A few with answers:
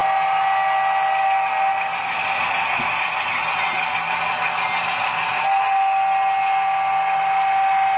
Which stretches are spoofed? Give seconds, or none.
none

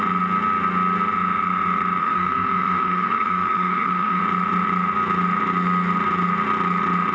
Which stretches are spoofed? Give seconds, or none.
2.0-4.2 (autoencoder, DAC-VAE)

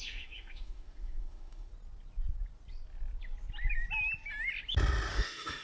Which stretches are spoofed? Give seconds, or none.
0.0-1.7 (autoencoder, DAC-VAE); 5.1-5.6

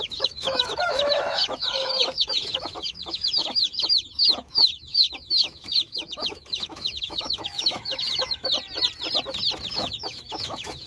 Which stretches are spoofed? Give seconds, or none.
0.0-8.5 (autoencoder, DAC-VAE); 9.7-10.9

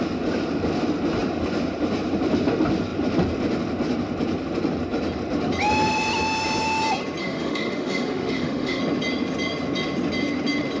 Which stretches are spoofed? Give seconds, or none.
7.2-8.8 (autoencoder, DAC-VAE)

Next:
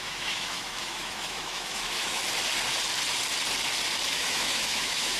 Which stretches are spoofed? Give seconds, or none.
0.0-2.2 (autoencoder, DAC-VAE); 4.1-5.2

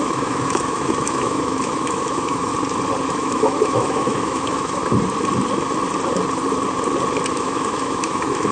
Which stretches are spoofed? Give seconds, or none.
0.0-2.5 (autoencoder, DAC-VAE); 3.1-4.8; 7.3-8.5

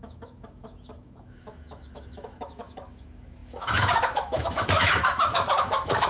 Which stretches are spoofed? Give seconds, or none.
0.0-6.1 (autoencoder, DAC-VAE)